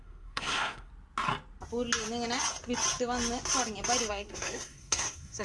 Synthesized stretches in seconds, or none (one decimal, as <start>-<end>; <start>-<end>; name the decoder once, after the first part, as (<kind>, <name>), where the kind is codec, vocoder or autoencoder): 0.0-0.9 (codec, SNAC); 4.1-5.4